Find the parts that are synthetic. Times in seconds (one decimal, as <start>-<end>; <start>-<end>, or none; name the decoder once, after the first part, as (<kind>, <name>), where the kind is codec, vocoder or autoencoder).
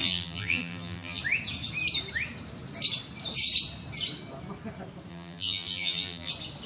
0.0-1.2 (vocoder, BigVGAN v2); 5.1-6.3